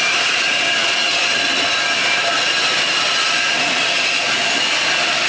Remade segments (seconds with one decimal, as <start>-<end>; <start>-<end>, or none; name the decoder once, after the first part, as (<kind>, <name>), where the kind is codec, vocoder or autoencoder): none